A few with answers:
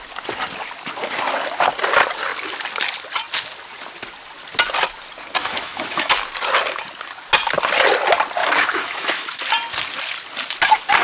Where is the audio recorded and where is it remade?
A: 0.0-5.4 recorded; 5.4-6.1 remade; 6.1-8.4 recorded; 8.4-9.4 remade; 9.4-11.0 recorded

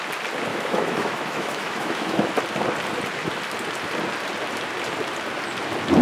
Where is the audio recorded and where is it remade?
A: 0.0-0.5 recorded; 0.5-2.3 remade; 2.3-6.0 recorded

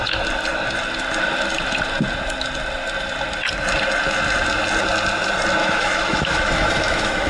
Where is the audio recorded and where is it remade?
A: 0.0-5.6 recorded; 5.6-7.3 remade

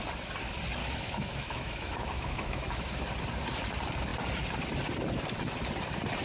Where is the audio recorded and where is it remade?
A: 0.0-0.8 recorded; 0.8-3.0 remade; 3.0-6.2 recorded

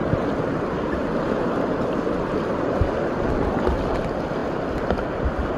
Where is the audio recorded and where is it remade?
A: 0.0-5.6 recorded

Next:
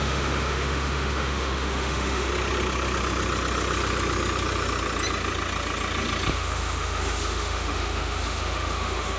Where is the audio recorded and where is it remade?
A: 0.0-2.3 remade; 2.3-6.3 recorded; 6.3-9.2 remade